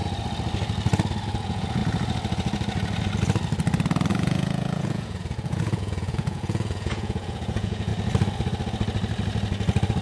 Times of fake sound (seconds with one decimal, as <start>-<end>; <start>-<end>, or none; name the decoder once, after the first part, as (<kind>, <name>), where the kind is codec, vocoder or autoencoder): 1.4-1.8 (vocoder, Vocos); 4.1-7.9